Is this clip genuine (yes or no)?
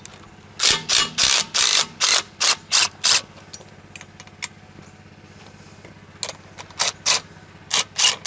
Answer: yes